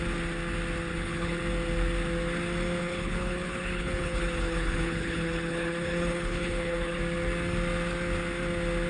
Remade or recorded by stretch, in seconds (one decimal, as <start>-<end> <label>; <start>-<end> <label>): 0.0-0.9 recorded; 0.9-1.4 remade; 1.4-2.8 recorded; 2.8-7.0 remade; 7.0-8.9 recorded